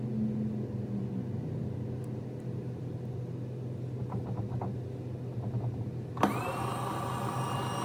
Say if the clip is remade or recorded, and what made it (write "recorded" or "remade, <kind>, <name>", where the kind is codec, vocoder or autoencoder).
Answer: recorded